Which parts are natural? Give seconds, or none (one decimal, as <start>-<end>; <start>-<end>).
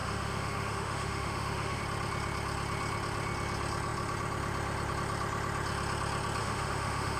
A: 1.8-6.4